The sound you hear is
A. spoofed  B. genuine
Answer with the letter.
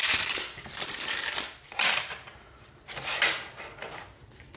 B